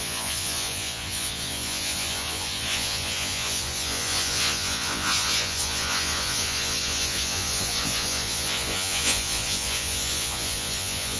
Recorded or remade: remade